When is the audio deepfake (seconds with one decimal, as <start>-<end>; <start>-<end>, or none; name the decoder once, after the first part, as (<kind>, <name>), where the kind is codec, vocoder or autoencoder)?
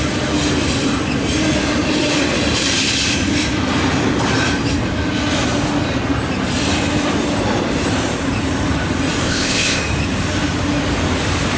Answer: 9.2-9.8 (codec, ZipCodec)